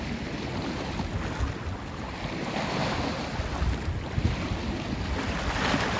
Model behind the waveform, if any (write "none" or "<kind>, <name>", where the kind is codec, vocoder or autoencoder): none